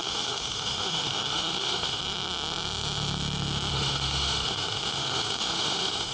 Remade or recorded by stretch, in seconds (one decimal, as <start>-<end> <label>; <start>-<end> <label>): 0.0-2.0 remade; 2.0-3.7 recorded; 3.7-6.1 remade